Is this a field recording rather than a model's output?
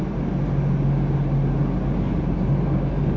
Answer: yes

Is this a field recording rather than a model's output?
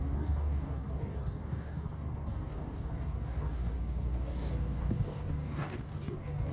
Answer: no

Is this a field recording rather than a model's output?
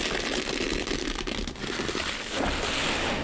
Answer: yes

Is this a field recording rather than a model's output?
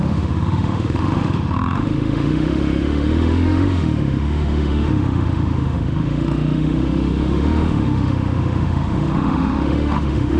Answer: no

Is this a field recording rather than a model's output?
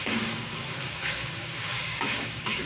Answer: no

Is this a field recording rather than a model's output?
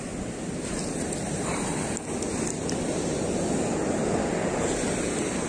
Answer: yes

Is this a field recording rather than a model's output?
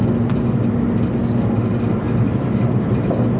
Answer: yes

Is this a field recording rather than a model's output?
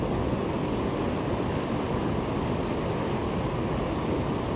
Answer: yes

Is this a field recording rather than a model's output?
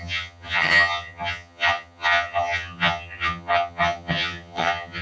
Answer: no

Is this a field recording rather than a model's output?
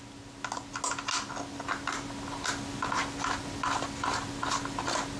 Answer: yes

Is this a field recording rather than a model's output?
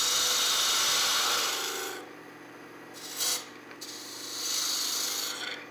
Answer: yes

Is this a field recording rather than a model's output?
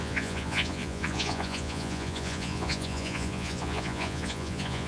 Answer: no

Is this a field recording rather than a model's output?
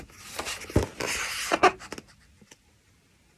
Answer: yes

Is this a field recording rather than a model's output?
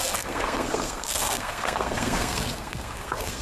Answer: no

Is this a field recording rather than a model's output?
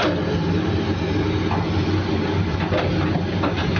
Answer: yes